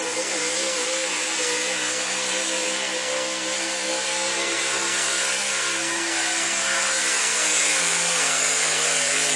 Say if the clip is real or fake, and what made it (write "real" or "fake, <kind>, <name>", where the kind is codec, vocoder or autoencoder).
fake, codec, SNAC